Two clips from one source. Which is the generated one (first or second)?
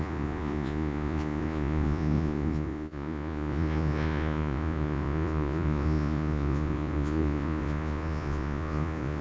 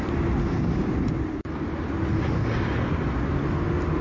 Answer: first